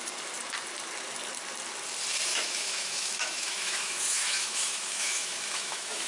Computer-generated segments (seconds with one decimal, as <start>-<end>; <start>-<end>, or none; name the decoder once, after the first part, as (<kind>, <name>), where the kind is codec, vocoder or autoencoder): 2.3-6.1 (autoencoder, DAC-VAE)